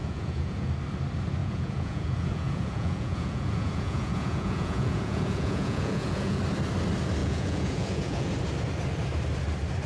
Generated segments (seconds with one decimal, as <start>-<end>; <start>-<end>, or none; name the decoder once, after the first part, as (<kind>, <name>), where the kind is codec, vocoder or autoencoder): 0.0-0.7 (vocoder, Vocos); 1.4-6.4; 7.2-8.3